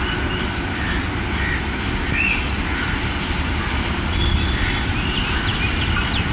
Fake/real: real